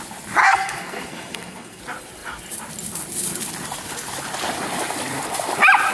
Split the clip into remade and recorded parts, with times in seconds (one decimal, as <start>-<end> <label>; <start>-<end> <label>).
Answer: 0.0-0.4 recorded; 0.4-1.8 remade; 1.8-5.9 recorded